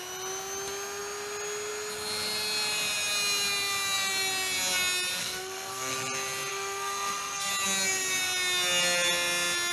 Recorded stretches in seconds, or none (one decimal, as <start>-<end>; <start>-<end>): 0.0-5.2; 5.9-6.5; 7.5-9.7

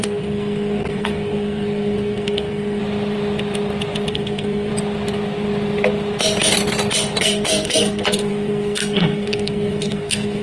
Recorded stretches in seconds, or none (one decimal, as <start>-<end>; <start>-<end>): 2.8-4.1; 4.7-7.2